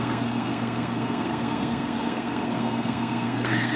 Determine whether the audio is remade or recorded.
remade